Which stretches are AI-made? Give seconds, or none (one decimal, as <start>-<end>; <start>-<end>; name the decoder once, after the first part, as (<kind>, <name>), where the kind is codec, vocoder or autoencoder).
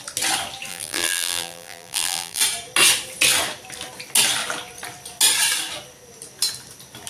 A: 0.7-2.4 (vocoder, BigVGAN v2)